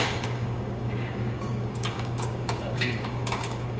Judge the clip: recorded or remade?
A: remade